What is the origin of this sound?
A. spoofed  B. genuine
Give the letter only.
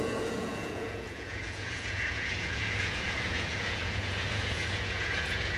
A